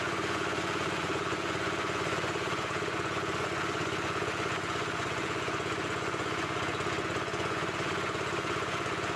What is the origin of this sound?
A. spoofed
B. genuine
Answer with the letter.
A